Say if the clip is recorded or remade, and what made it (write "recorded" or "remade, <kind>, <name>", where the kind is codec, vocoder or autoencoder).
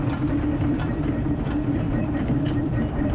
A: remade, vocoder, BigVGAN v2